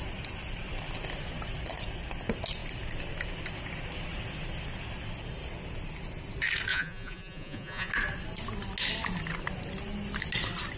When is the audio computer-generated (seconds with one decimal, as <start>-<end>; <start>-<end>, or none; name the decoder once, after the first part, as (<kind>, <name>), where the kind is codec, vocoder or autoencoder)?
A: 6.7-7.9 (vocoder, Vocos)